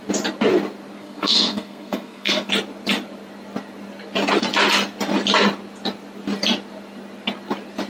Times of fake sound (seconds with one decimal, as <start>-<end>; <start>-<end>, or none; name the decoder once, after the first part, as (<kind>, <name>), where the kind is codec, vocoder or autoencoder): 1.0-2.5 (codec, SNAC)